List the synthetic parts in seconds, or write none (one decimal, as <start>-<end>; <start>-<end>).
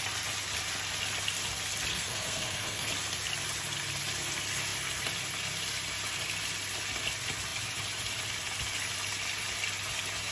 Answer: 1.9-2.9